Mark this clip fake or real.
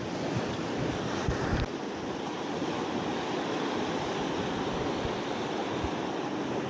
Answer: real